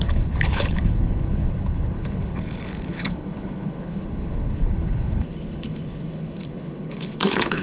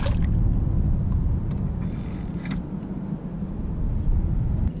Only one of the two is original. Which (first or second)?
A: second